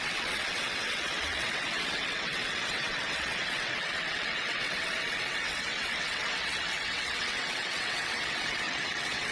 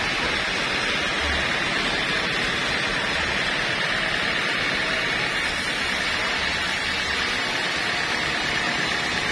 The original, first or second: second